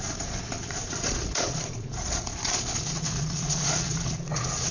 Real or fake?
fake